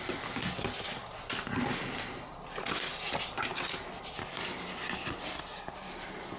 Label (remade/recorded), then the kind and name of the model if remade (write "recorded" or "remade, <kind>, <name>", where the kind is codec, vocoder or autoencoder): recorded